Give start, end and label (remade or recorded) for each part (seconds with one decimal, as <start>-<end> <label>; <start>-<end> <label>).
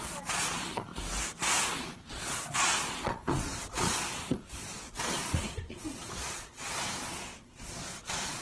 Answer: 0.0-0.9 remade; 0.9-1.8 recorded; 1.8-8.4 remade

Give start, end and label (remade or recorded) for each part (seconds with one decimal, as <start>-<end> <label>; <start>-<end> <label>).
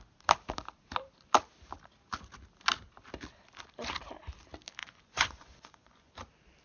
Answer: 0.0-4.8 recorded; 4.8-6.1 remade; 6.1-6.6 recorded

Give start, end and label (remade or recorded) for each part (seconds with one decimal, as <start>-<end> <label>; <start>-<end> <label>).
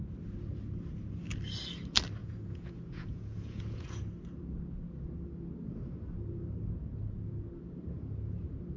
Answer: 0.0-2.2 recorded; 2.2-4.0 remade; 4.0-8.8 recorded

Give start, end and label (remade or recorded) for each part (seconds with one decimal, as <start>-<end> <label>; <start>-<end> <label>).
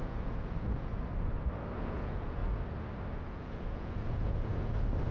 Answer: 0.0-0.9 remade; 0.9-1.8 recorded; 1.8-2.4 remade; 2.4-3.2 recorded; 3.2-4.5 remade; 4.5-5.1 recorded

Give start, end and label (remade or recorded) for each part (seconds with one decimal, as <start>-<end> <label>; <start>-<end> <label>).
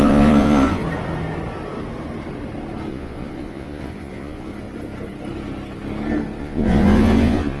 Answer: 0.0-0.8 remade; 0.8-2.9 recorded; 2.9-4.5 remade; 4.5-6.4 recorded; 6.4-7.6 remade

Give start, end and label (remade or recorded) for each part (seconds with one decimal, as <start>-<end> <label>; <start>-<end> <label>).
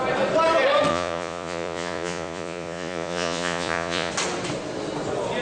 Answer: 0.0-0.9 recorded; 0.9-4.1 remade; 4.1-5.4 recorded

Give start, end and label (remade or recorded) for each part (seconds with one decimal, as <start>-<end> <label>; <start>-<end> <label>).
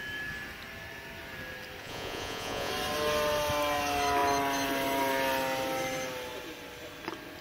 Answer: 0.0-1.8 recorded; 1.8-2.7 remade; 2.7-7.4 recorded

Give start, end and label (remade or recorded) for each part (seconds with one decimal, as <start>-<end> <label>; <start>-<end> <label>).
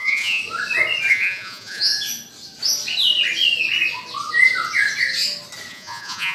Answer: 0.0-0.4 remade; 0.4-1.1 recorded; 1.1-1.9 remade; 1.9-5.7 recorded; 5.7-6.3 remade